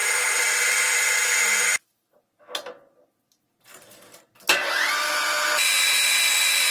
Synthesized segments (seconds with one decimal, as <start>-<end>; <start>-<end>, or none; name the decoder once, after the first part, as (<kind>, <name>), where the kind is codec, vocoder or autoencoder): none